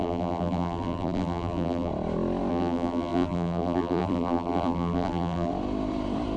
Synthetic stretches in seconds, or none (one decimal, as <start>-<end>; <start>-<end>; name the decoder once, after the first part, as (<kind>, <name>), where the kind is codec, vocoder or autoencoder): 0.0-1.9 (vocoder, BigVGAN v2); 2.5-5.5